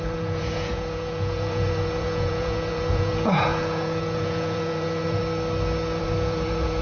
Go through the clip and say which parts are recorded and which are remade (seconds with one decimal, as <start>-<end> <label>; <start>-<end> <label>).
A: 0.0-5.2 remade; 5.2-6.0 recorded; 6.0-6.8 remade